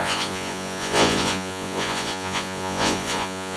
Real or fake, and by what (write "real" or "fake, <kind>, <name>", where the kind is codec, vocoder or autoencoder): fake, vocoder, Vocos